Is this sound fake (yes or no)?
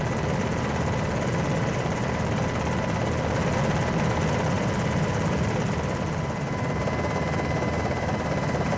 no